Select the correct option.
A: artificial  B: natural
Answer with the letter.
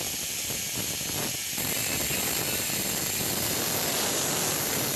B